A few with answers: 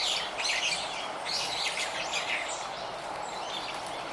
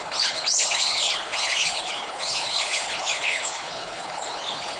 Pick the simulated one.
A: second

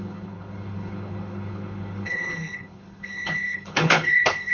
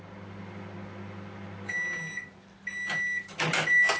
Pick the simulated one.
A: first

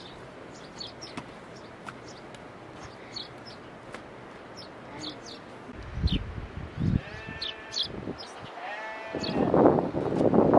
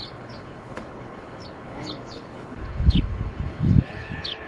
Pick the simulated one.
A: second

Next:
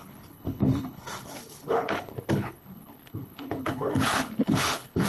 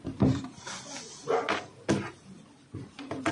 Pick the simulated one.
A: first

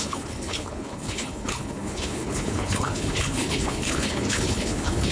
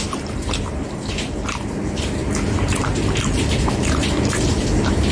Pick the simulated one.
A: first